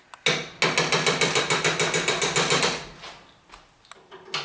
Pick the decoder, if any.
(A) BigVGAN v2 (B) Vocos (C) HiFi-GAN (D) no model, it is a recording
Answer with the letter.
D